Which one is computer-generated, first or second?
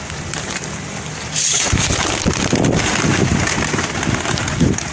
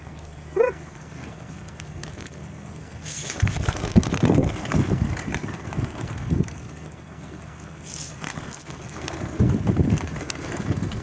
second